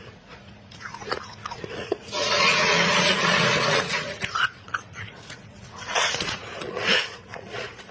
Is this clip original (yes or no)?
no